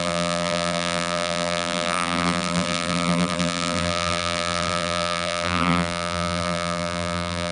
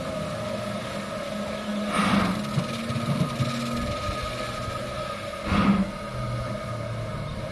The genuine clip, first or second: second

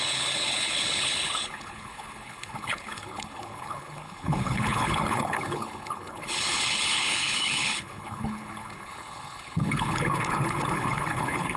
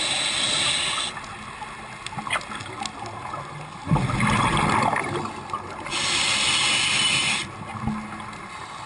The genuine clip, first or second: second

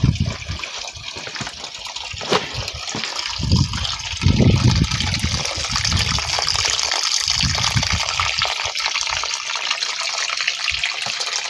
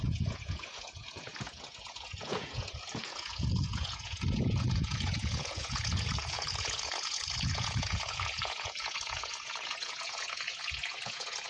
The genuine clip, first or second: first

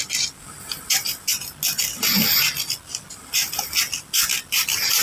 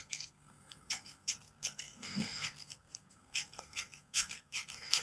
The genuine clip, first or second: first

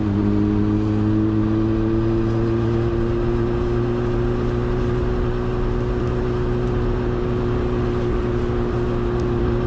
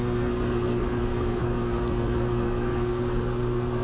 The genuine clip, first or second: first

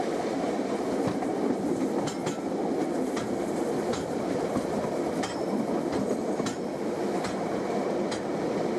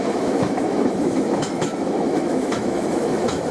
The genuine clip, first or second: first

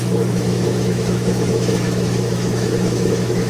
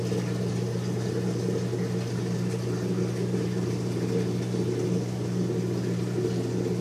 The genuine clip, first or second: second